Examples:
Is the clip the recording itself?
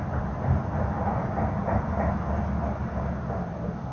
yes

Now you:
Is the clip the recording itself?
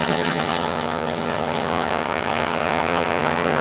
no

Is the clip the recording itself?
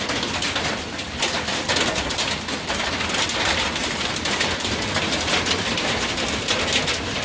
yes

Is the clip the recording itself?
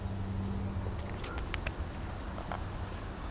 yes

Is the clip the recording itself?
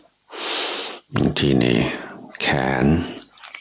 yes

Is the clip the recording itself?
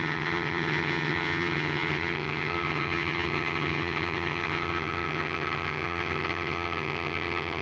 no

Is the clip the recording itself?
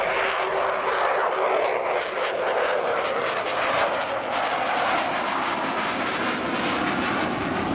yes